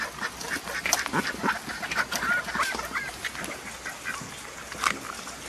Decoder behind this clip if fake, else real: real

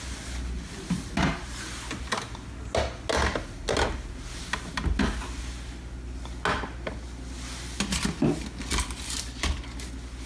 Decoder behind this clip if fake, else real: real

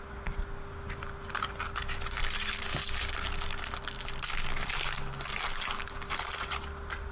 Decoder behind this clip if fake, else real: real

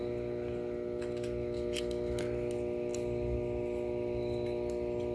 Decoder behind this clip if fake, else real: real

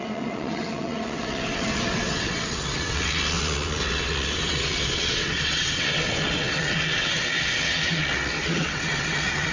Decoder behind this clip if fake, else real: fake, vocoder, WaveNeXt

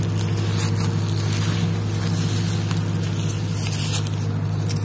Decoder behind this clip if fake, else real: real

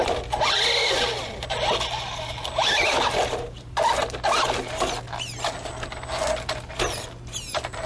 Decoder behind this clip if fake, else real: real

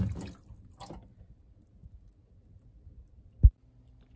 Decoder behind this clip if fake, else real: real